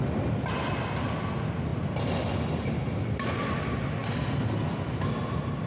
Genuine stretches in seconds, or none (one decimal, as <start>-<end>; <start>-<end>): 0.0-5.7